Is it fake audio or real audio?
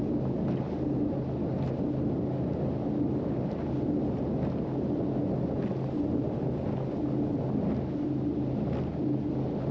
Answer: real